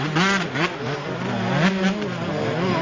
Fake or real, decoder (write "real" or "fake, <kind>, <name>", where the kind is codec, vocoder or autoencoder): real